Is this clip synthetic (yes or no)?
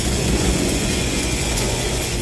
yes